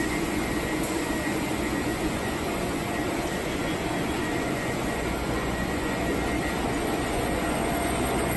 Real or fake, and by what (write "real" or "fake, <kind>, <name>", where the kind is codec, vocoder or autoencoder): fake, vocoder, Vocos